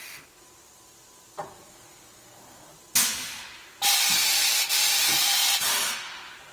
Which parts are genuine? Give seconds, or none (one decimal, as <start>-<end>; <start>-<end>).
0.0-6.5